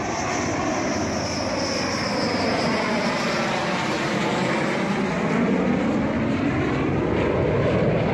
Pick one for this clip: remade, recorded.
recorded